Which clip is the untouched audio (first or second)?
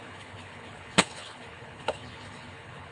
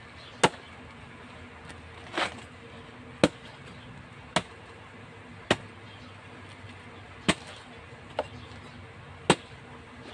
second